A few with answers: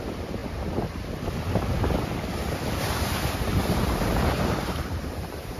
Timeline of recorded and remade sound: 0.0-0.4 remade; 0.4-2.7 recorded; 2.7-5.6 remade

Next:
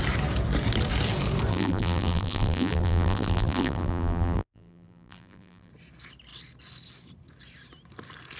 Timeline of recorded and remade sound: 0.0-1.5 recorded; 1.5-5.7 remade; 5.7-8.4 recorded

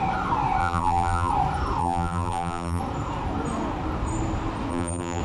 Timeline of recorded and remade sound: 0.0-0.6 recorded; 0.6-1.3 remade; 1.3-1.8 recorded; 1.8-2.8 remade; 2.8-4.7 recorded; 4.7-5.2 remade